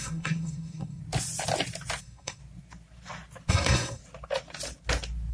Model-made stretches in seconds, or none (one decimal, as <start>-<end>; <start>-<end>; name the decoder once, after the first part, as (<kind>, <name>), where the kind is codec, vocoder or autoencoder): 0.0-1.0 (codec, SNAC); 2.0-2.4; 3.5-4.0